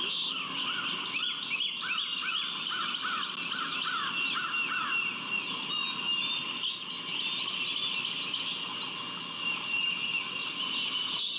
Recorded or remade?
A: recorded